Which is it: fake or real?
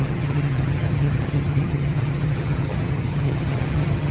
fake